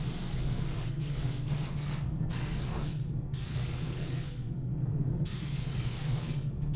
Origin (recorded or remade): remade